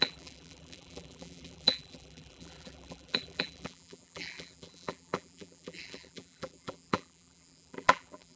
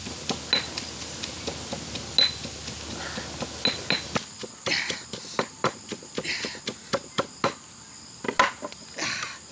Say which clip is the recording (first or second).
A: second